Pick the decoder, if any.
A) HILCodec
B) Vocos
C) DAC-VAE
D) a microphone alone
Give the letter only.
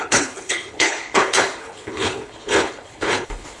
A